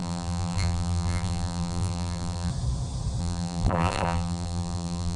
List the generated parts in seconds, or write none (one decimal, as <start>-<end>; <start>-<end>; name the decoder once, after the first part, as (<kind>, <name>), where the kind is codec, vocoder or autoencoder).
0.0-2.5 (vocoder, BigVGAN v2); 3.2-5.2